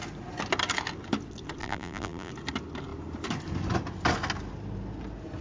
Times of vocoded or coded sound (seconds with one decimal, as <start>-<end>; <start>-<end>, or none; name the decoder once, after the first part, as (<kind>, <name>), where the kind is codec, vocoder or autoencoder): 1.6-2.3 (vocoder, BigVGAN v2)